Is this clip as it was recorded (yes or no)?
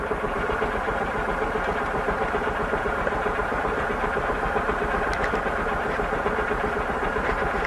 no